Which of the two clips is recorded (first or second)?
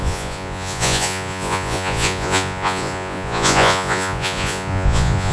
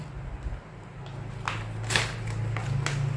second